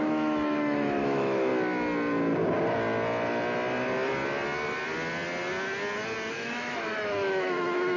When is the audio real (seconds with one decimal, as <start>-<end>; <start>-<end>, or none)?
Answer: 1.5-6.3